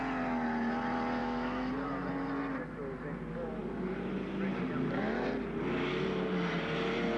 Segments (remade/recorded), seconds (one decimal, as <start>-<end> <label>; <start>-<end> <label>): 0.0-1.2 recorded; 1.2-1.7 remade; 1.7-7.2 recorded